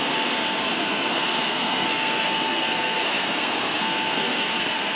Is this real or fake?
fake